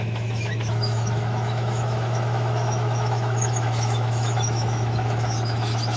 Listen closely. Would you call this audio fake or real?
fake